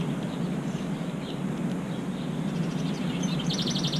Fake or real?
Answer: real